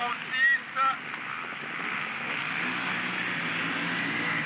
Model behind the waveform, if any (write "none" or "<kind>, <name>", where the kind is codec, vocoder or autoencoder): none